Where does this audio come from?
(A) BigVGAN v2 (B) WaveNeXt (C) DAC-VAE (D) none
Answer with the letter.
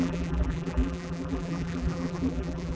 A